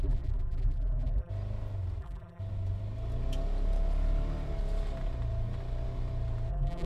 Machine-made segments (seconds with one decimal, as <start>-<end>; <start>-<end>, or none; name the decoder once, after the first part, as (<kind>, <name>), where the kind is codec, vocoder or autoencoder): 0.0-1.3 (vocoder, BigVGAN v2); 2.0-2.4; 6.5-6.9

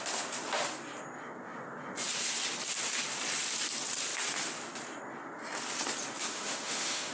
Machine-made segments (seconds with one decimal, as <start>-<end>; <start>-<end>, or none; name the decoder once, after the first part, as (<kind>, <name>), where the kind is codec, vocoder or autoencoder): 6.3-7.1 (autoencoder, DAC-VAE)